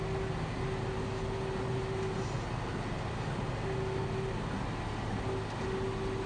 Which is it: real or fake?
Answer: real